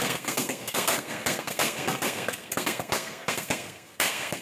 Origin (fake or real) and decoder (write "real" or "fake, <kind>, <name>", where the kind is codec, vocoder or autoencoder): fake, codec, SNAC